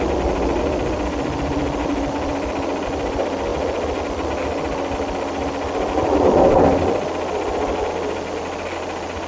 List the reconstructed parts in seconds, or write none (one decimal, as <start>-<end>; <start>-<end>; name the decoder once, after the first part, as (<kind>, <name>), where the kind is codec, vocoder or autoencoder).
none